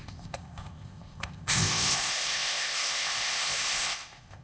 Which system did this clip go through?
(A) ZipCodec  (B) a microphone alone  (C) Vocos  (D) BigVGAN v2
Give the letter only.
A